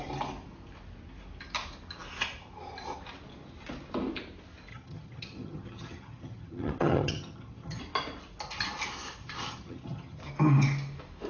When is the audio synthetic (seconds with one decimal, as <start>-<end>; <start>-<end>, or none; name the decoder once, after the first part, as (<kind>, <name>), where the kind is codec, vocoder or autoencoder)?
4.7-7.8 (vocoder, HiFi-GAN); 9.2-10.2